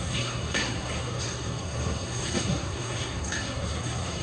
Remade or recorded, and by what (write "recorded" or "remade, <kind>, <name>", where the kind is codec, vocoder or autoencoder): remade, codec, SNAC